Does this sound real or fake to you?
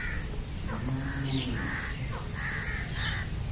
real